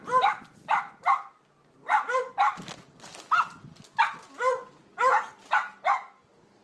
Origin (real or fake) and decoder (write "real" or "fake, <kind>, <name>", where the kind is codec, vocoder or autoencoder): real